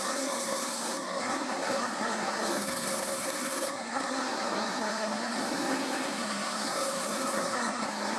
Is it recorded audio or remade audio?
remade